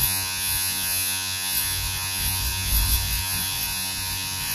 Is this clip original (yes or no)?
no